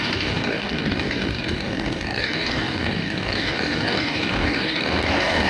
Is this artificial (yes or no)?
yes